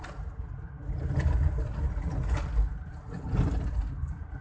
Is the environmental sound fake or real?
real